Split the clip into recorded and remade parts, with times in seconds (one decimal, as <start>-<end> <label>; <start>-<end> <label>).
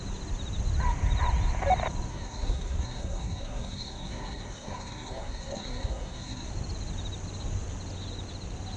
0.0-2.1 recorded; 2.1-6.5 remade; 6.5-8.8 recorded